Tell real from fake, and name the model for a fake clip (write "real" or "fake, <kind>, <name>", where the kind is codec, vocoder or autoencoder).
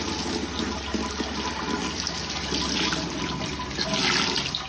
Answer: real